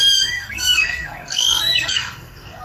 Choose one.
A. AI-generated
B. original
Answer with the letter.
A